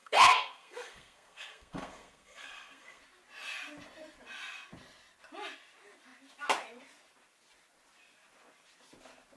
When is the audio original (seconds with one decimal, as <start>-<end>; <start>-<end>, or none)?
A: 3.0-9.4